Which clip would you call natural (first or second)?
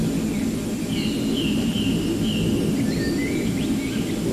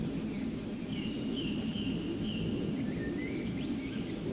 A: first